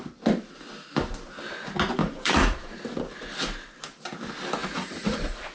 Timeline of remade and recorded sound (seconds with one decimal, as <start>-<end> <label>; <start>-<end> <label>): 0.0-2.0 recorded; 2.0-2.8 remade; 2.8-4.6 recorded; 4.6-5.5 remade